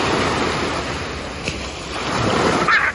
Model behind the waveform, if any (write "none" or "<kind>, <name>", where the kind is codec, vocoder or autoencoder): none